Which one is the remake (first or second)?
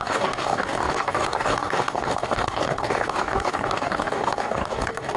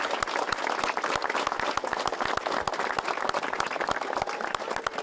first